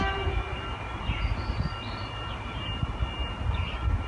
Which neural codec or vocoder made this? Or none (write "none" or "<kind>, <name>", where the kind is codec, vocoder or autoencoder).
none